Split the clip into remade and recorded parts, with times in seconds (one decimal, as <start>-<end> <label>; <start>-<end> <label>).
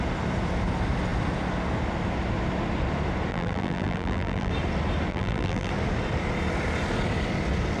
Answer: 0.0-3.3 recorded; 3.3-4.5 remade; 4.5-5.1 recorded; 5.1-5.7 remade; 5.7-7.8 recorded